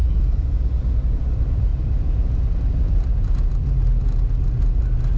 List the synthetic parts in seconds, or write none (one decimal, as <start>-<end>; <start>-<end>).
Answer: 0.0-1.2